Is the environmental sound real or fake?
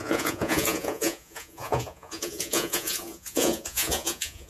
fake